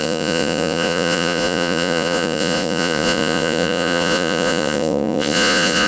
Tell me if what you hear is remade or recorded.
remade